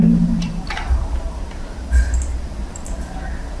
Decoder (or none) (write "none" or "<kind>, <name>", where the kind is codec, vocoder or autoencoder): vocoder, BigVGAN v2